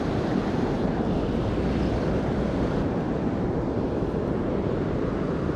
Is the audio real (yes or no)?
no